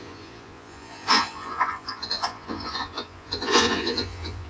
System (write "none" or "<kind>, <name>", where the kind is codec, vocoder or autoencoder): vocoder, Vocos